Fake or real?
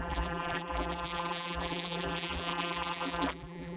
fake